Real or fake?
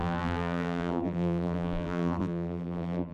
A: fake